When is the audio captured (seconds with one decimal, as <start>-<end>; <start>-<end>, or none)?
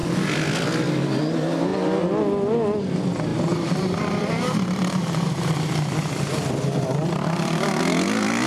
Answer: 0.0-3.3; 7.8-8.5